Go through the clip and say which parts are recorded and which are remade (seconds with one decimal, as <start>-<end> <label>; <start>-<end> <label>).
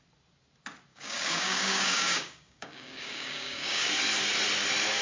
0.0-0.9 recorded; 0.9-3.9 remade; 3.9-5.0 recorded